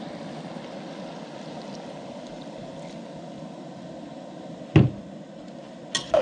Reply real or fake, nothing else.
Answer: real